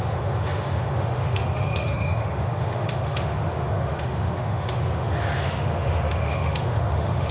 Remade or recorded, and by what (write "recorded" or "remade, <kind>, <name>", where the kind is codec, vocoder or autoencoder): remade, autoencoder, DAC-VAE